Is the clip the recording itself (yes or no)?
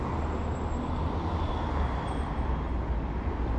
yes